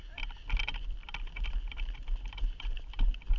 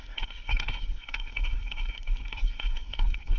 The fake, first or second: second